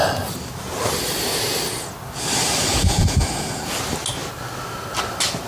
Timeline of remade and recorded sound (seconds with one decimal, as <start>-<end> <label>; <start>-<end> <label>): 0.0-2.7 recorded; 2.7-3.6 remade; 3.6-5.5 recorded